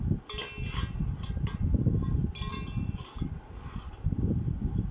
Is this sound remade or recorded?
recorded